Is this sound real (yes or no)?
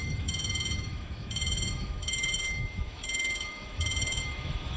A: no